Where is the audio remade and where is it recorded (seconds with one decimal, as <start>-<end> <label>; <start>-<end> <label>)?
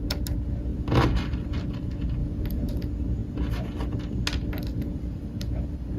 0.0-0.7 recorded; 0.7-1.6 remade; 1.6-2.2 recorded; 2.2-2.7 remade; 2.7-4.9 recorded; 4.9-6.0 remade